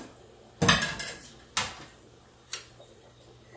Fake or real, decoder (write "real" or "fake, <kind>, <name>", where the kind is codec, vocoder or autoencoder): real